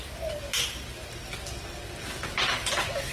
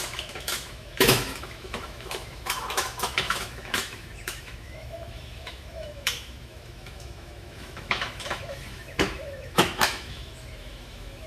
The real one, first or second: first